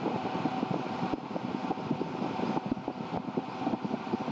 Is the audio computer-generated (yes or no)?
no